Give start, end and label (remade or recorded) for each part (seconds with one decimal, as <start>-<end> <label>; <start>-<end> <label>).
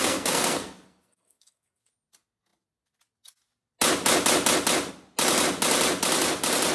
0.0-1.9 remade; 1.9-6.7 recorded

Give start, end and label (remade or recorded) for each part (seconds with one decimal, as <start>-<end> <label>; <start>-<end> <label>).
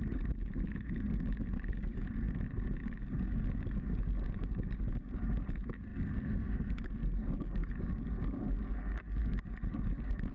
0.0-10.3 remade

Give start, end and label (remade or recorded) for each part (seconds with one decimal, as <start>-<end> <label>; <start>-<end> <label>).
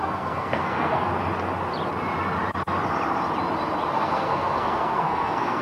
0.0-1.1 remade; 1.1-3.9 recorded; 3.9-5.6 remade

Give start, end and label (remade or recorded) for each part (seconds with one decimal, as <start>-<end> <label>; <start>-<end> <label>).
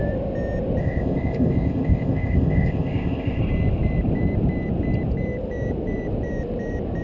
0.0-0.8 recorded; 0.8-3.4 remade; 3.4-7.0 recorded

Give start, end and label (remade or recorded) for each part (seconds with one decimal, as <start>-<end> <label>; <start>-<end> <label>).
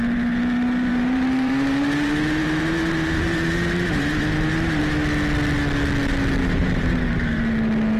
0.0-0.9 recorded; 0.9-4.8 remade; 4.8-6.4 recorded; 6.4-7.4 remade; 7.4-8.0 recorded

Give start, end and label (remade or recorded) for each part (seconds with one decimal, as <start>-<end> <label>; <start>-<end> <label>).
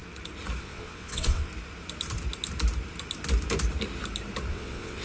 0.0-0.6 recorded; 0.6-1.5 remade; 1.5-4.5 recorded; 4.5-5.0 remade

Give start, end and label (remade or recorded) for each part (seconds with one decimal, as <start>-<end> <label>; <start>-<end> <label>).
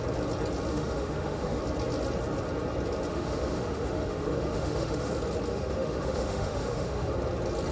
0.0-0.7 recorded; 0.7-1.6 remade; 1.6-3.1 recorded; 3.1-5.1 remade; 5.1-5.5 recorded; 5.5-7.1 remade; 7.1-7.7 recorded